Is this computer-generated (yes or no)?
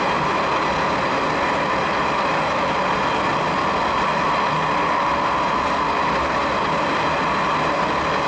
no